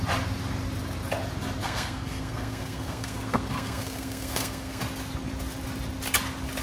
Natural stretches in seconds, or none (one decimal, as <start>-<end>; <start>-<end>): 0.0-1.6; 4.8-6.6